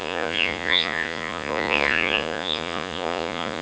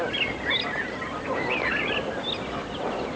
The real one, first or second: second